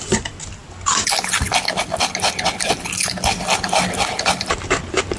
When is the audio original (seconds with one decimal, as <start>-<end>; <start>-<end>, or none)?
0.0-5.2